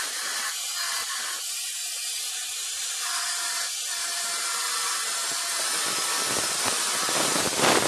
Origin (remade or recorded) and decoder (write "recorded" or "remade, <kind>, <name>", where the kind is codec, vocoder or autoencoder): recorded